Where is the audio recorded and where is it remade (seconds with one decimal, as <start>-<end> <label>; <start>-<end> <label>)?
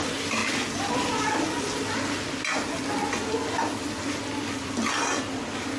0.0-5.8 recorded